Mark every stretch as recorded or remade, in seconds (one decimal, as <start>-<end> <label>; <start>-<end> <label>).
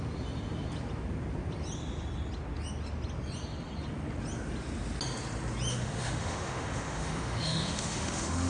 0.0-5.7 recorded; 5.7-8.5 remade